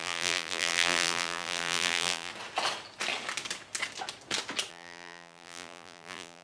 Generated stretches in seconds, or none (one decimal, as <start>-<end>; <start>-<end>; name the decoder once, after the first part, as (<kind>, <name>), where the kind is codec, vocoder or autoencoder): 0.0-2.3 (vocoder, BigVGAN v2); 4.7-6.4